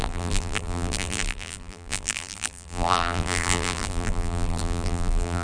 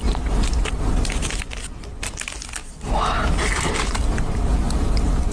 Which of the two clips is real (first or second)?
second